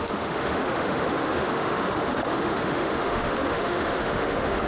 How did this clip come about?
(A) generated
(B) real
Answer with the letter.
A